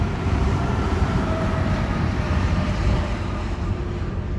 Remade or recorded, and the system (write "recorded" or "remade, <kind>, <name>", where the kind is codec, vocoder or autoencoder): remade, vocoder, BigVGAN v2